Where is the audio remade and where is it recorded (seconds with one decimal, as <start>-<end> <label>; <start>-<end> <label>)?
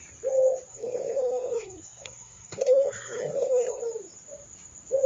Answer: 0.0-0.7 recorded; 0.7-3.8 remade; 3.8-5.1 recorded